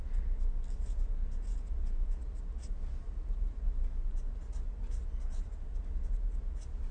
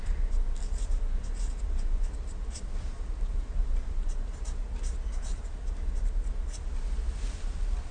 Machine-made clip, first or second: second